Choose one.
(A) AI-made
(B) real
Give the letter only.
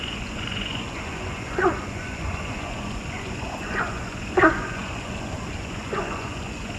A